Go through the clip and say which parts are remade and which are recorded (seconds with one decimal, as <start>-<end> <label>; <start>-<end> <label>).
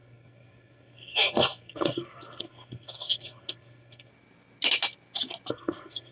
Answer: 0.0-4.1 remade; 4.1-5.5 recorded; 5.5-6.1 remade